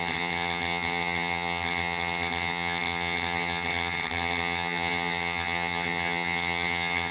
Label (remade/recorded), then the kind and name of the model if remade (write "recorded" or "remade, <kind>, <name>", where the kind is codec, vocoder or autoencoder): remade, vocoder, HiFi-GAN